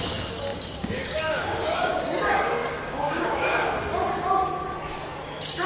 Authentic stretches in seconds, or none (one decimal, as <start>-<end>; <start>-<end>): 0.0-0.5; 3.8-5.7